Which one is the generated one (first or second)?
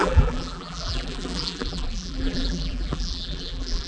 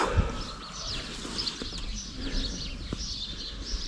first